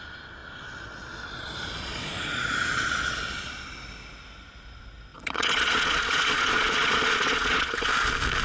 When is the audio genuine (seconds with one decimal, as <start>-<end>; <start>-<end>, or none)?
0.0-0.4; 3.7-5.1; 7.9-8.4